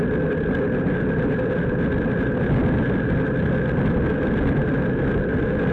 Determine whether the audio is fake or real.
real